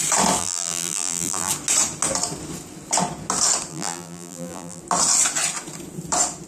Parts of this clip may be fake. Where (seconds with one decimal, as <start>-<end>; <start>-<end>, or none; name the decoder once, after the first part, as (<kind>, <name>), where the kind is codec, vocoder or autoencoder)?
0.4-1.5 (vocoder, BigVGAN v2); 3.7-4.8